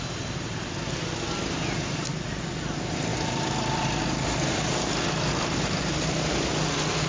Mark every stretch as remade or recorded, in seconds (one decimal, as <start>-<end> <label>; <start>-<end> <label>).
0.0-7.1 recorded